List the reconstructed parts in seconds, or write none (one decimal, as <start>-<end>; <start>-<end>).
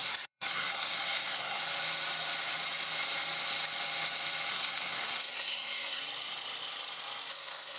0.0-1.6; 4.5-6.0; 7.3-7.8